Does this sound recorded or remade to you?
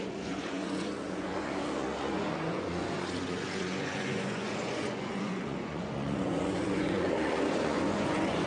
remade